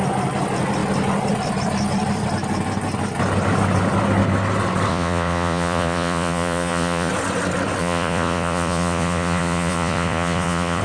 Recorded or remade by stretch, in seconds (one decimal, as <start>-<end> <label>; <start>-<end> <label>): 0.0-4.9 recorded; 4.9-7.1 remade; 7.1-7.8 recorded; 7.8-10.8 remade